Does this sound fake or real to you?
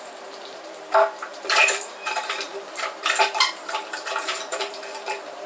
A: fake